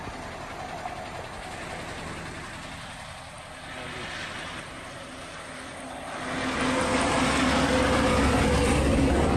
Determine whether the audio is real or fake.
real